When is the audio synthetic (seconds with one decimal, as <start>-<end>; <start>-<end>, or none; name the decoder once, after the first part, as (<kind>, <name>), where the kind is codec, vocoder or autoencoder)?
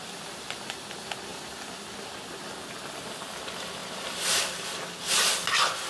none